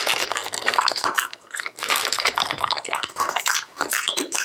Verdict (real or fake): fake